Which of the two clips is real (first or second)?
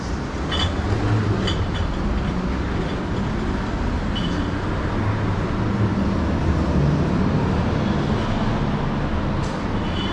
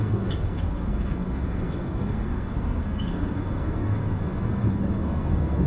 first